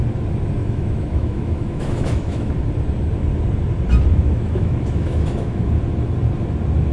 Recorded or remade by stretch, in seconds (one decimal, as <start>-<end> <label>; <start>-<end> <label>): 0.0-0.6 recorded; 0.6-2.5 remade; 2.5-4.1 recorded; 4.1-5.7 remade; 5.7-6.9 recorded